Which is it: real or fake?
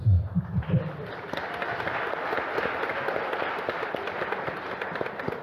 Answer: real